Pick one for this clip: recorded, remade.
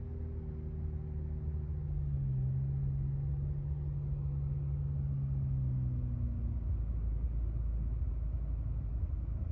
recorded